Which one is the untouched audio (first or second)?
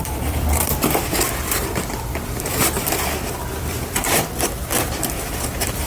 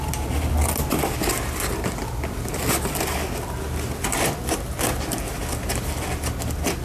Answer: second